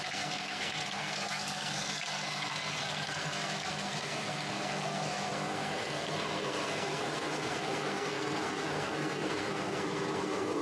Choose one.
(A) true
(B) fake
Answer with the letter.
B